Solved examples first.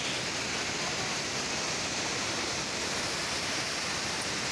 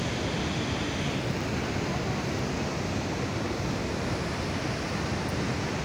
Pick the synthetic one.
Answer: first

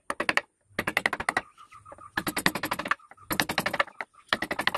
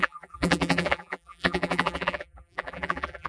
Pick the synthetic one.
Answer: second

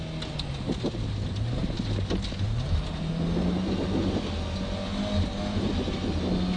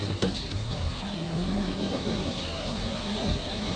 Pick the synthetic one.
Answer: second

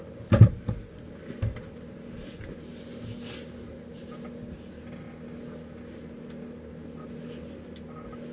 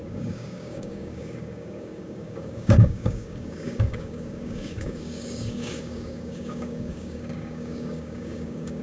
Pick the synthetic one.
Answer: second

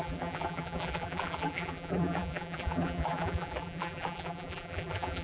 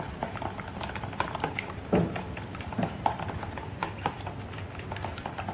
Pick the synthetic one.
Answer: first